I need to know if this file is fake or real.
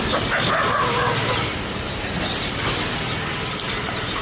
real